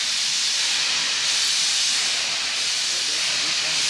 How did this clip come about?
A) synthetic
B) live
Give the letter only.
A